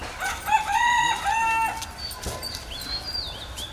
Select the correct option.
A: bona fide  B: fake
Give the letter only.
A